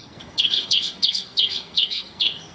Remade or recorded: remade